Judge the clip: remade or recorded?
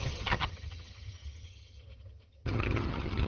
remade